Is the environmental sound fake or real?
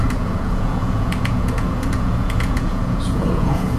fake